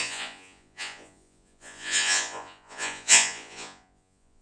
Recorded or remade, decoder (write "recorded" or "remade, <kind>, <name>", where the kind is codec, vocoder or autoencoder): remade, vocoder, Vocos